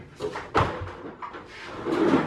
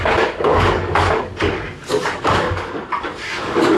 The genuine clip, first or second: first